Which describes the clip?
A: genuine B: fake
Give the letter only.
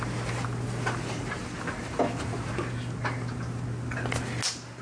A